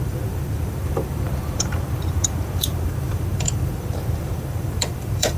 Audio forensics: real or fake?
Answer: fake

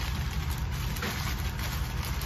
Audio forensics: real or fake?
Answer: real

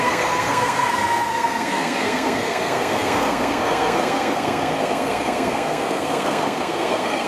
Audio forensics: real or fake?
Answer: fake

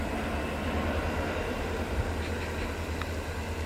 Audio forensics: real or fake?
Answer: real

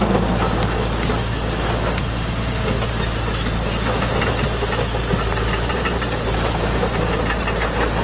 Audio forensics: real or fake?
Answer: real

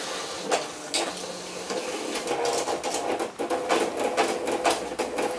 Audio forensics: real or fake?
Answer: real